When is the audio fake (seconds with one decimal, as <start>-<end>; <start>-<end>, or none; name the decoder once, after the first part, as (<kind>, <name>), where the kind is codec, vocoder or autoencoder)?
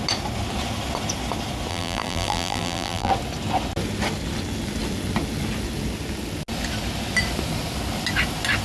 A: 1.7-3.1 (vocoder, BigVGAN v2)